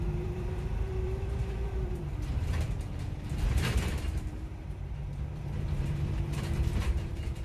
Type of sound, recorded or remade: remade